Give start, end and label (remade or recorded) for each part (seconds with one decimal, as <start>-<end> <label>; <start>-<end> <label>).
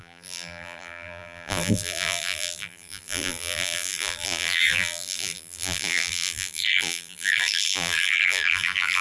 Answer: 0.0-9.0 remade